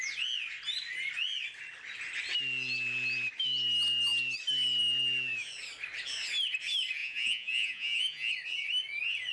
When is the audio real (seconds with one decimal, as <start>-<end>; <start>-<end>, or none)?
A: 0.0-7.0; 8.3-9.3